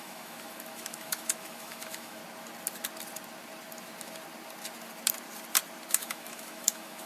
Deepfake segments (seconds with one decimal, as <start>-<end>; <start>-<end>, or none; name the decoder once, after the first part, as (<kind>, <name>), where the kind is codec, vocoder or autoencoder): 0.0-2.2 (autoencoder, DAC-VAE); 5.9-7.1